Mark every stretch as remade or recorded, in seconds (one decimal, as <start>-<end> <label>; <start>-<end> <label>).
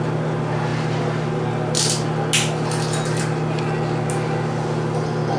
0.0-5.4 recorded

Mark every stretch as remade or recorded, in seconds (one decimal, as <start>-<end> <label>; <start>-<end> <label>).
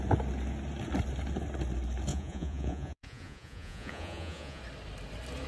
0.0-2.1 recorded; 2.1-4.6 remade; 4.6-5.5 recorded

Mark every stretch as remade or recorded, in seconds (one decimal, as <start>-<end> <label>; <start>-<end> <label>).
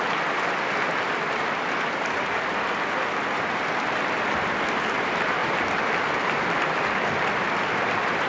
0.0-5.4 recorded; 5.4-8.3 remade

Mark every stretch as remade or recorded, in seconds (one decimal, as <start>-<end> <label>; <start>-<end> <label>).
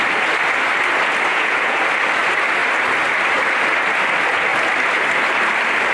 0.0-1.3 recorded; 1.3-1.8 remade; 1.8-5.9 recorded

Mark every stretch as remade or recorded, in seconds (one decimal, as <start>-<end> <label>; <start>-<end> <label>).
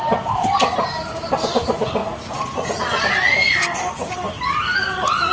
0.0-2.0 recorded; 2.0-3.0 remade; 3.0-5.3 recorded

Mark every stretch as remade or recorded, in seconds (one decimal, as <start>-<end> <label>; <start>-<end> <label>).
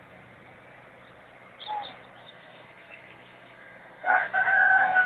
0.0-2.2 recorded; 2.2-5.1 remade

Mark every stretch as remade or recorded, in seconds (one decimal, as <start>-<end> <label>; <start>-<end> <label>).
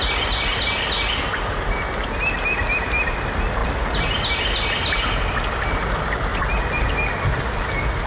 0.0-8.1 recorded